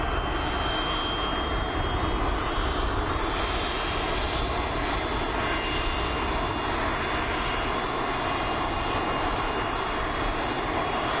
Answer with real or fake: real